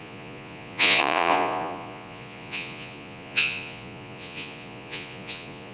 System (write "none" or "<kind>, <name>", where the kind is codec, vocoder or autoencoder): vocoder, Vocos